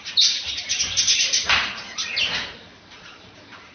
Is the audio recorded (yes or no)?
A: no